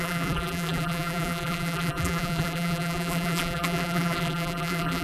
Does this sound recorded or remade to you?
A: remade